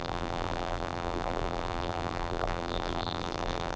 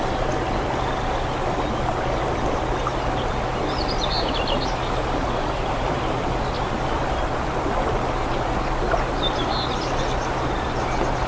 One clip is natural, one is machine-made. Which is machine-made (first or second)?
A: first